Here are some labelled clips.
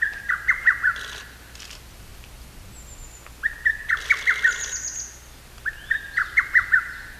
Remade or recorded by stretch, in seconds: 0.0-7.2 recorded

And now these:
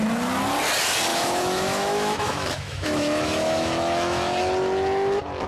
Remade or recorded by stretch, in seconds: 0.0-1.1 recorded; 1.1-4.4 remade; 4.4-5.5 recorded

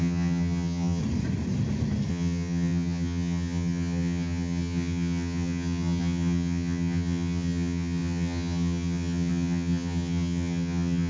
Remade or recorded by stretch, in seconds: 0.0-1.0 remade; 1.0-2.1 recorded; 2.1-11.1 remade

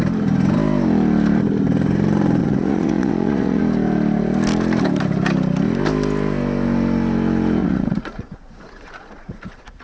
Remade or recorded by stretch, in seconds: 0.0-2.4 recorded; 2.4-3.6 remade; 3.6-7.6 recorded; 7.6-9.8 remade

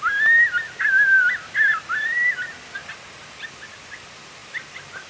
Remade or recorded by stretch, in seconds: 0.0-5.1 recorded

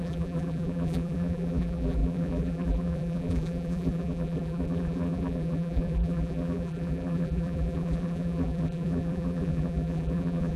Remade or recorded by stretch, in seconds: 0.0-10.6 remade